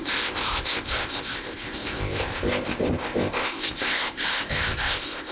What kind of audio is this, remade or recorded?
remade